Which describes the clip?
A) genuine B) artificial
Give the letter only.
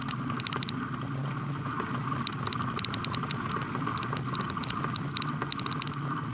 A